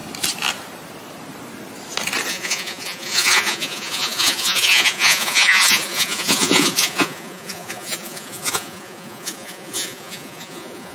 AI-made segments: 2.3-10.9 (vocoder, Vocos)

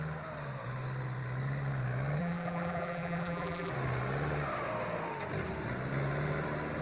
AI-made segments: 2.2-3.7 (vocoder, BigVGAN v2)

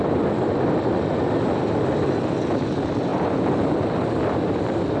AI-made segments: none

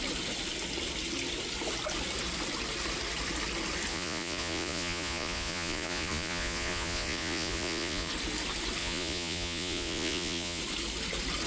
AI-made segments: 3.9-8.1 (vocoder, Vocos); 8.8-10.6

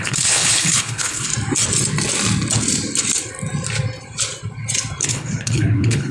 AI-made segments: 0.0-1.3 (codec, HILCodec); 5.0-6.1

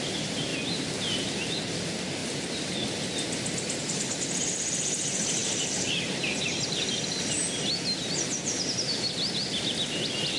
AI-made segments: none

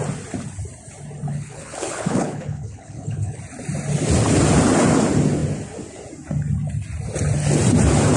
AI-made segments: 1.3-3.4 (codec, HILCodec)

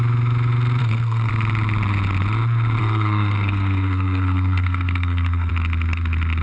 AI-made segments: 0.8-1.3 (codec, SNAC); 2.8-5.5